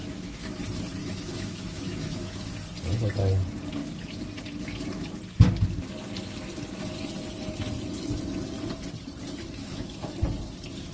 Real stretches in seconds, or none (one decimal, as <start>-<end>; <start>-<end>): 0.6-1.0; 2.5-9.6; 10.1-10.9